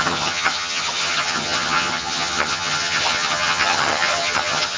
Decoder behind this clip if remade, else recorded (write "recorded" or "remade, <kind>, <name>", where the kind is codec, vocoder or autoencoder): remade, vocoder, HiFi-GAN